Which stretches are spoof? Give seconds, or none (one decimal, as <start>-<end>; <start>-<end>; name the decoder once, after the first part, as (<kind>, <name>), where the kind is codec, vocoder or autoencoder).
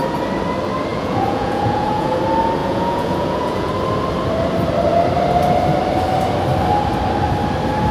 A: 0.9-2.2 (vocoder, Vocos); 2.6-3.7